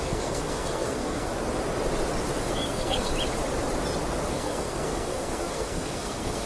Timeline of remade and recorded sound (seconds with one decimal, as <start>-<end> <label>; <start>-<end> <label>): 0.0-1.3 remade; 1.3-2.4 recorded; 2.4-3.1 remade; 3.1-4.3 recorded; 4.3-6.5 remade